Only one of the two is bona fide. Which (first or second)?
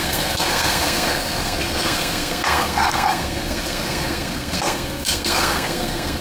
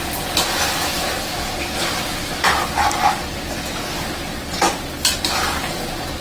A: second